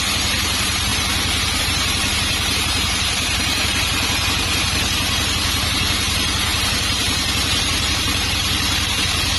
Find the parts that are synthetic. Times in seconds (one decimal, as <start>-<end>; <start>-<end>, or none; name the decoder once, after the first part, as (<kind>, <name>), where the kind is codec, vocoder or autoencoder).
0.0-0.9 (vocoder, BigVGAN v2); 1.6-9.4